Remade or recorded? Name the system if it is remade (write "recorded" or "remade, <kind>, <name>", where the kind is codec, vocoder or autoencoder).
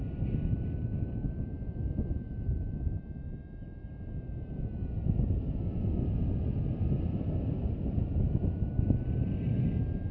recorded